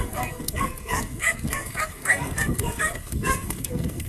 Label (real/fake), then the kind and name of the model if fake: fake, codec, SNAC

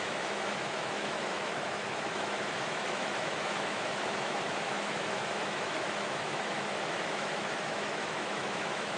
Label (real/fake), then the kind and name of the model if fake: fake, autoencoder, DAC-VAE